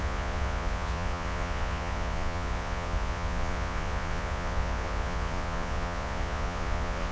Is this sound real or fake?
fake